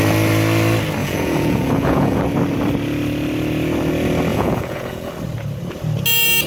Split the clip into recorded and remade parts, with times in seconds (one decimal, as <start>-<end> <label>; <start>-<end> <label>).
0.0-1.0 recorded; 1.0-2.2 remade; 2.2-4.3 recorded; 4.3-5.1 remade; 5.1-6.5 recorded